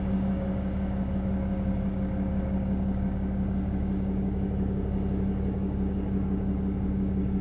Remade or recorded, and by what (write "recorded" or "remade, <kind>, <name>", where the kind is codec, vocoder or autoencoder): remade, codec, DAC